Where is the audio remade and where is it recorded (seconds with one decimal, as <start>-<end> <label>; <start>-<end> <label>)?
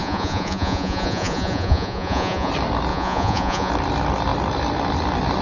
0.0-2.5 remade; 2.5-2.9 recorded; 2.9-3.7 remade; 3.7-5.4 recorded